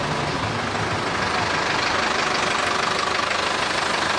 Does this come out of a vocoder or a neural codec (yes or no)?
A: no